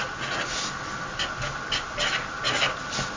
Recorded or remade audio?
recorded